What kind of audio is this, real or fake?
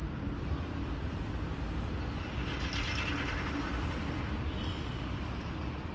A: real